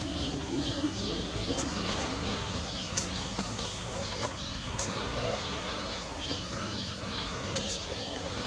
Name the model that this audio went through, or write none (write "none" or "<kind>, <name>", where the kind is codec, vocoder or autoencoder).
codec, SNAC